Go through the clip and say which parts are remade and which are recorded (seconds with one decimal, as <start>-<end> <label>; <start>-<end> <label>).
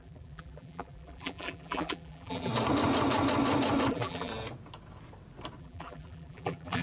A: 0.0-2.5 remade; 2.5-3.9 recorded; 3.9-4.3 remade; 4.3-5.6 recorded; 5.6-6.8 remade